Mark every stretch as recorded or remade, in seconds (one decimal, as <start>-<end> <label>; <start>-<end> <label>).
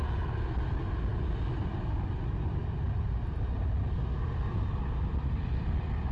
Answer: 0.0-6.1 recorded